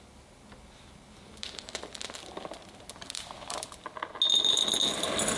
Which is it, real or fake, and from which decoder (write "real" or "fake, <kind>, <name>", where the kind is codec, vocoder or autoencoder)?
real